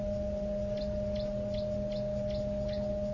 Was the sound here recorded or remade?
recorded